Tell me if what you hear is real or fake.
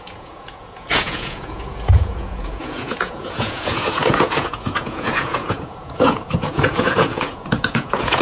fake